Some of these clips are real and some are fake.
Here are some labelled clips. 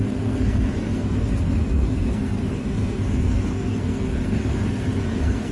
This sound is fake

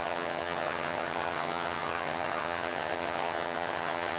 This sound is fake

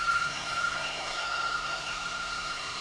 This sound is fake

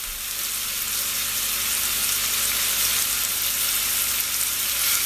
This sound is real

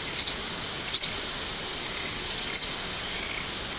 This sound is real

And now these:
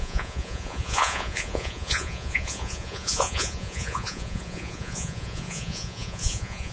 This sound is fake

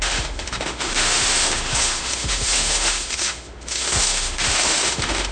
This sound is fake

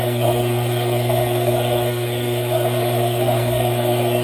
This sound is fake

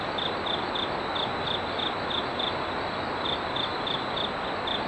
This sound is real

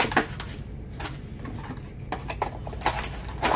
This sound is real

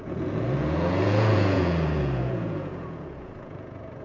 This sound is fake